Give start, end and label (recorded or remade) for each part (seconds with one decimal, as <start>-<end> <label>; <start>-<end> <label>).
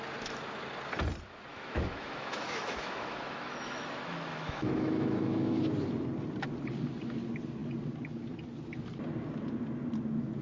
0.0-1.5 recorded; 1.5-5.6 remade; 5.6-10.4 recorded